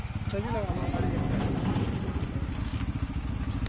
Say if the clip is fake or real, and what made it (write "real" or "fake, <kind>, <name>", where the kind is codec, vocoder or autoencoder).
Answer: real